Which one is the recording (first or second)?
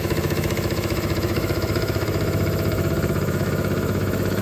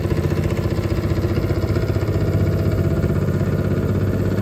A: second